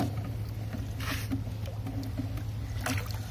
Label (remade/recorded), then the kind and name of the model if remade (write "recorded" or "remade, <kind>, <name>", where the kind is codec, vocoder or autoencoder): recorded